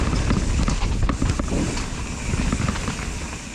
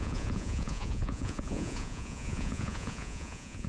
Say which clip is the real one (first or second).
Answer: first